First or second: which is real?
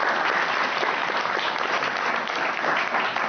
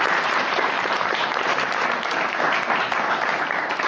first